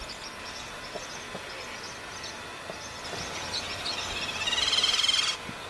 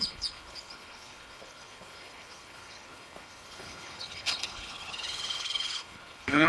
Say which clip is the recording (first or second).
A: first